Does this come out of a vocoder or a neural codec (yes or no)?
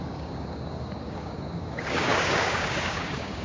yes